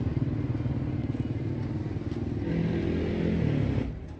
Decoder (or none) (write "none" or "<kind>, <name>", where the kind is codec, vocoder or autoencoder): none